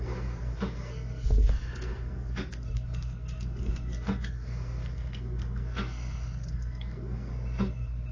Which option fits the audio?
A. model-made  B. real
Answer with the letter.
A